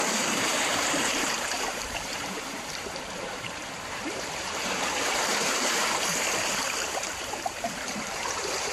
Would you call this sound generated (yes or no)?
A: yes